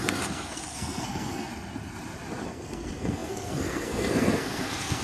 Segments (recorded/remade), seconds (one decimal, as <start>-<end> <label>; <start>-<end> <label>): 0.0-1.5 remade; 1.5-2.4 recorded; 2.4-5.0 remade